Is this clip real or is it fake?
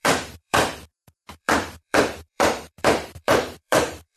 fake